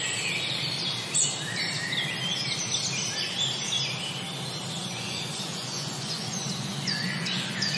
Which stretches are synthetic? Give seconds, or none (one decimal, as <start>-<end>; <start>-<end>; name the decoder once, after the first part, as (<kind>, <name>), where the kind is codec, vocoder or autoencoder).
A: 4.8-7.8 (vocoder, Vocos)